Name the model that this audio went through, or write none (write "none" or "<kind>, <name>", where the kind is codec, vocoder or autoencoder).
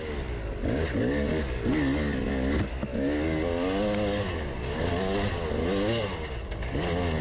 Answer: none